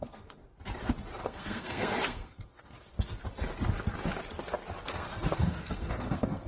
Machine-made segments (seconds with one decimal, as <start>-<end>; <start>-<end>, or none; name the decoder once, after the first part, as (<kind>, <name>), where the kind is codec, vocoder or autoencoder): 0.0-0.4 (codec, SNAC); 1.2-3.2; 4.9-6.5